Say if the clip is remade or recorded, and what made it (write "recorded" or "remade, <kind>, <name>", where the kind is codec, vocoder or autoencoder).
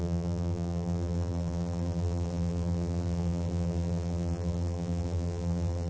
remade, vocoder, BigVGAN v2